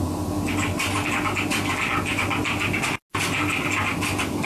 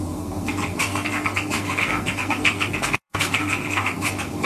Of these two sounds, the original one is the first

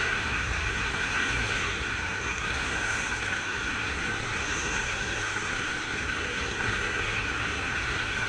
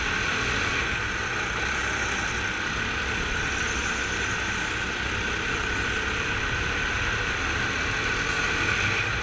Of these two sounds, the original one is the second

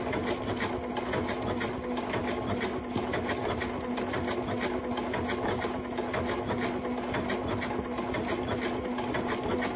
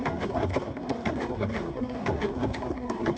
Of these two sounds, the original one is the first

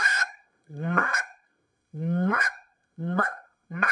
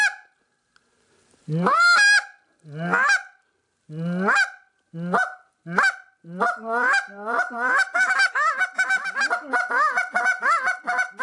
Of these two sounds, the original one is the second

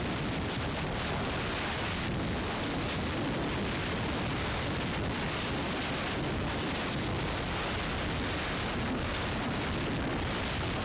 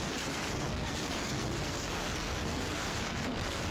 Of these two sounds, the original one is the first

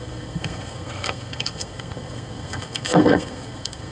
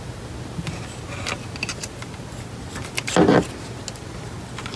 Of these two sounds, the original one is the second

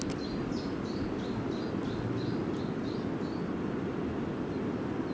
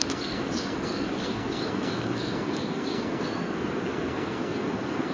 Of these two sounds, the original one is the first